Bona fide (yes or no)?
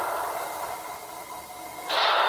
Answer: yes